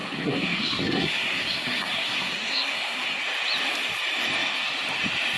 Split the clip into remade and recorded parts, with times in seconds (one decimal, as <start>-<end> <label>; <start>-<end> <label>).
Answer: 0.0-3.2 remade; 3.2-5.4 recorded